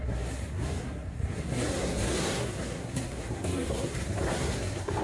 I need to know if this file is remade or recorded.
remade